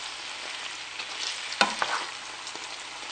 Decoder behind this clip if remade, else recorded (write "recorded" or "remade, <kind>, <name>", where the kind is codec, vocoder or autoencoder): recorded